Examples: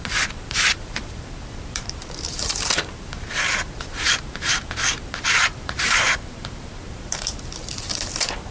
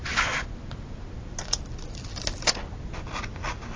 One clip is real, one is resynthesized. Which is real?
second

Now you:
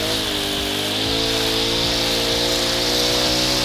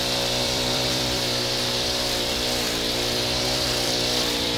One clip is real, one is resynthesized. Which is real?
first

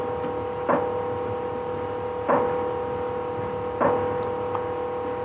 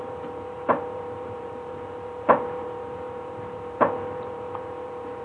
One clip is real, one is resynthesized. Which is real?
first